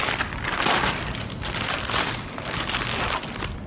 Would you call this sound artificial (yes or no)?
no